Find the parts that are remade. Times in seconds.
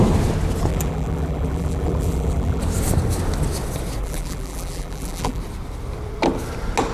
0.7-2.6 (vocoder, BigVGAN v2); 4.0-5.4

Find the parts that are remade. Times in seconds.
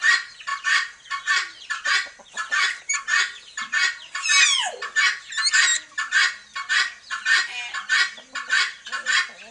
0.5-2.8 (vocoder, BigVGAN v2)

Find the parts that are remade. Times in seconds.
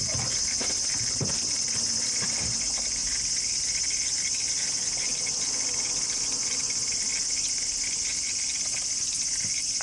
0.0-7.1 (vocoder, BigVGAN v2); 9.0-9.8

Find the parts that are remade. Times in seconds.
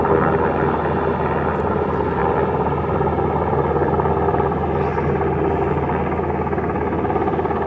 2.2-5.7 (vocoder, BigVGAN v2)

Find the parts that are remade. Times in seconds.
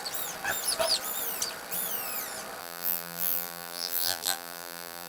2.6-5.1 (vocoder, BigVGAN v2)